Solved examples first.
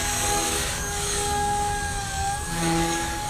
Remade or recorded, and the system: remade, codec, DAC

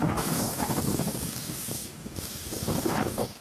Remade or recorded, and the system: remade, codec, DAC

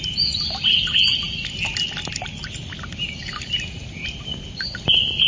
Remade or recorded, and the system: recorded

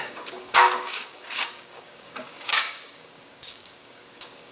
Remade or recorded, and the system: remade, codec, DAC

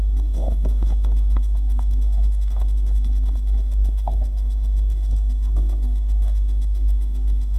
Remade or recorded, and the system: remade, codec, DAC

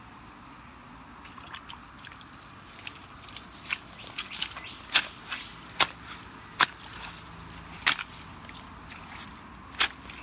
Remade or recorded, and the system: recorded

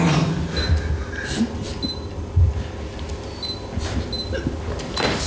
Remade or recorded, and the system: recorded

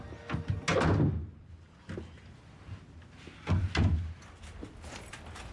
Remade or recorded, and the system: recorded